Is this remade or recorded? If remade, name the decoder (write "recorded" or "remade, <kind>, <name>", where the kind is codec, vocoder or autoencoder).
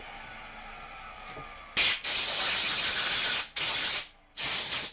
recorded